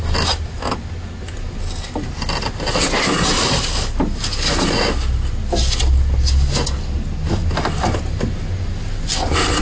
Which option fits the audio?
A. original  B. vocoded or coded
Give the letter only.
A